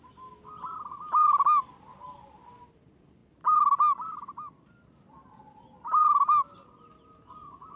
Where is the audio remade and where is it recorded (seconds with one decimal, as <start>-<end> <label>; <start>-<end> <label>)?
0.0-7.8 recorded